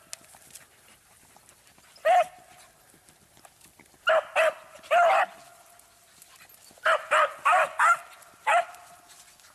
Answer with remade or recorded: recorded